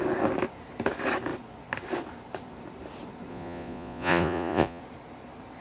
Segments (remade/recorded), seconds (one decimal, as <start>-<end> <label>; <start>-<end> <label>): 0.0-3.3 recorded; 3.3-4.8 remade; 4.8-5.6 recorded